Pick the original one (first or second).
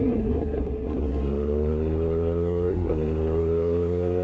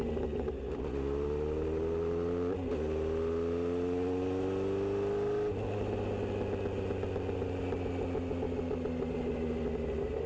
second